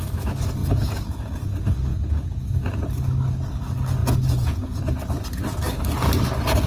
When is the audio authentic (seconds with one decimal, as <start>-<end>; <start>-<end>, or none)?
0.0-0.6; 1.5-1.9; 2.5-4.0; 4.8-6.7